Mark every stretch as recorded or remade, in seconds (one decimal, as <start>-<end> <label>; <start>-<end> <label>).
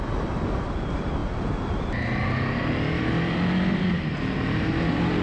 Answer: 0.0-5.2 recorded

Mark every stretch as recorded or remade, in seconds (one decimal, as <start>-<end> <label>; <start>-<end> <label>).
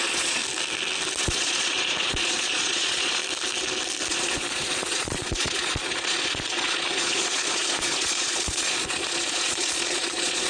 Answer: 0.0-0.4 remade; 0.4-1.2 recorded; 1.2-3.2 remade; 3.2-4.1 recorded; 4.1-10.5 remade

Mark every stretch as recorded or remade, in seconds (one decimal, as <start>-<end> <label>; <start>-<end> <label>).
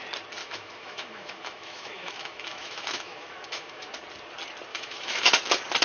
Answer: 0.0-0.4 recorded; 0.4-3.9 remade; 3.9-4.7 recorded; 4.7-5.3 remade; 5.3-5.8 recorded